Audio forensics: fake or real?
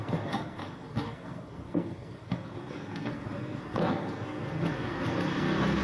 fake